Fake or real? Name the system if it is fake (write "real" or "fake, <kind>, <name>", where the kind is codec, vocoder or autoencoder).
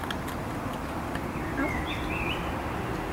real